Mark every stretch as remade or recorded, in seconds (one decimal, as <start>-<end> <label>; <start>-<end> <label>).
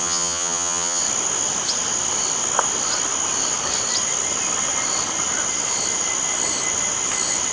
0.0-1.0 remade; 1.0-7.5 recorded